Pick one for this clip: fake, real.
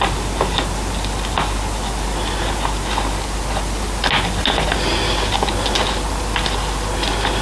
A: real